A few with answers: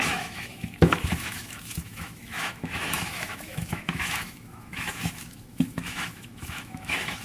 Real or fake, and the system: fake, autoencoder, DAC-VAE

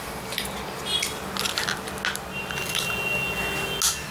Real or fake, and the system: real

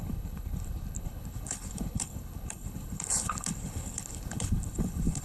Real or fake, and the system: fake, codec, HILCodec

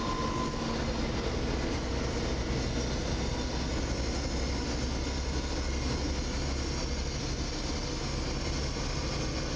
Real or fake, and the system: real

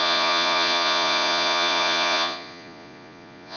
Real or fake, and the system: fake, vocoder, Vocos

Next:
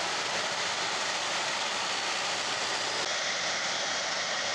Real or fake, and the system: real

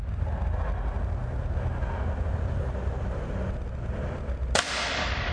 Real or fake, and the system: real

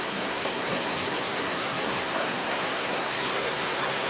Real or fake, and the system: fake, codec, SNAC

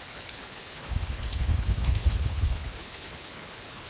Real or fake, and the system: fake, codec, HILCodec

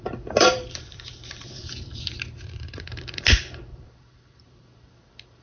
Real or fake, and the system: fake, vocoder, BigVGAN v2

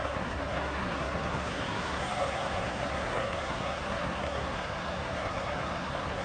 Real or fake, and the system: fake, codec, SNAC